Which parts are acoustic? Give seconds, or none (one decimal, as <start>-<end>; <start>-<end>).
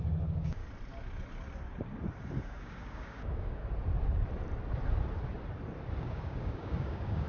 0.6-2.4; 3.6-6.0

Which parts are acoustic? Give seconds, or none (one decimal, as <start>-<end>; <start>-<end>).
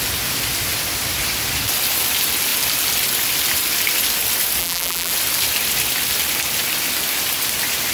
0.0-4.6; 5.1-7.9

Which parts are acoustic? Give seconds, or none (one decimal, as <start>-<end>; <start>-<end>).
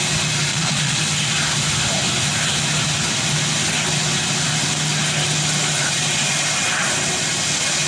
0.0-0.5; 1.0-7.9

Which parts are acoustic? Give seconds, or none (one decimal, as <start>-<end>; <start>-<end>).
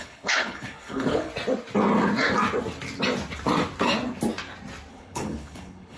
1.3-4.9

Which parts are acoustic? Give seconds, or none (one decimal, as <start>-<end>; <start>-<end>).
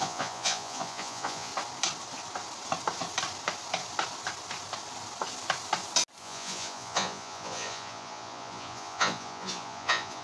1.5-6.2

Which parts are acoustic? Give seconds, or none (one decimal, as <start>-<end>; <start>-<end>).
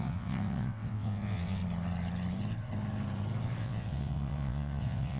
1.6-3.6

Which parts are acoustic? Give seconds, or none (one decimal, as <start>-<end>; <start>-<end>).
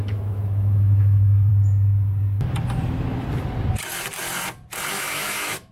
1.5-4.9